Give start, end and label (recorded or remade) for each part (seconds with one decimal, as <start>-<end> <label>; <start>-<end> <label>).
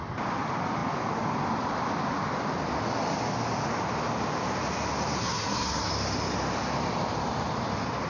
0.0-5.2 recorded; 5.2-5.9 remade; 5.9-8.1 recorded